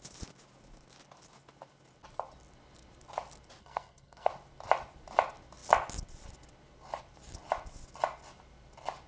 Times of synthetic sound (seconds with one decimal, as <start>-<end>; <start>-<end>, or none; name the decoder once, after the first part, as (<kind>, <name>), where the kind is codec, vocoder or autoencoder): 3.6-4.3 (codec, SNAC)